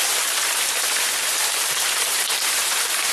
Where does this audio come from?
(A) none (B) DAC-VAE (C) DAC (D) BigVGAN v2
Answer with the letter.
D